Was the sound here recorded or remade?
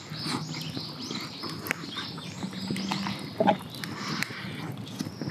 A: recorded